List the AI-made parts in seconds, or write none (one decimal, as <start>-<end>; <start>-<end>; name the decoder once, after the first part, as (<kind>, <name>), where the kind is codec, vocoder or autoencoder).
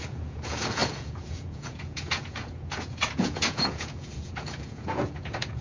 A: 0.0-5.6 (vocoder, Vocos)